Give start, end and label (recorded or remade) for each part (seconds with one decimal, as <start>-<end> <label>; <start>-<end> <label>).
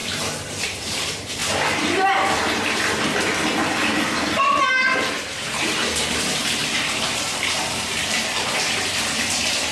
0.0-1.4 remade; 1.4-3.6 recorded; 3.6-9.7 remade